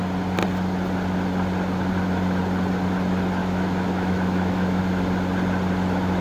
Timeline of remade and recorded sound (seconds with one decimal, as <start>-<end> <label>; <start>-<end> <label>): 0.0-3.4 recorded; 3.4-4.8 remade; 4.8-6.2 recorded